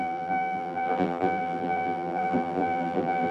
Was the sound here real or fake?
fake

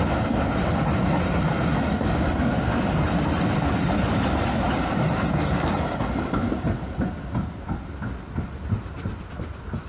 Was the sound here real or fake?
real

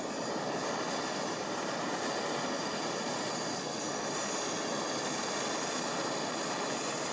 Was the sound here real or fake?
fake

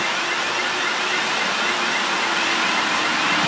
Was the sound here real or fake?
real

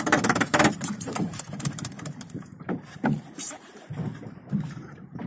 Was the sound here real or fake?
fake